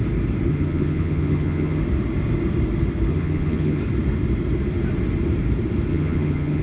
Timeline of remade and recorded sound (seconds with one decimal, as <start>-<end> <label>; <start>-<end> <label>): 0.0-0.5 recorded; 0.5-1.8 remade; 1.8-3.1 recorded; 3.1-3.8 remade; 3.8-5.9 recorded; 5.9-6.6 remade